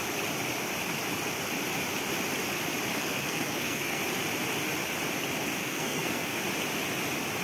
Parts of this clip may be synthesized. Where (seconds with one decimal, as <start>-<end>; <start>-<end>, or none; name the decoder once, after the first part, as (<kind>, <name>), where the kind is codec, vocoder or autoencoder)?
2.9-4.0 (codec, SNAC); 5.6-6.4